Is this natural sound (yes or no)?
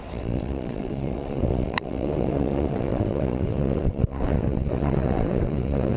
no